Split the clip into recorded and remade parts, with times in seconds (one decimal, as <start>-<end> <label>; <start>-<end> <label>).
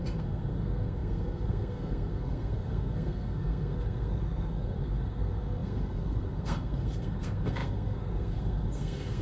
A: 0.0-9.2 remade